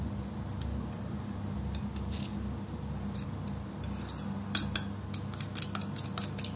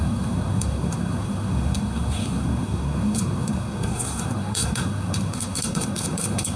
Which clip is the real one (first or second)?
first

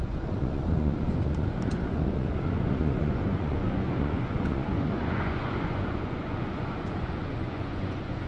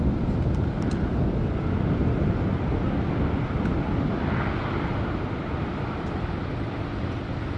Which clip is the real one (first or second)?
second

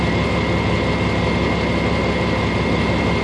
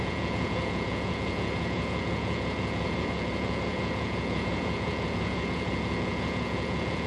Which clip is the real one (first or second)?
first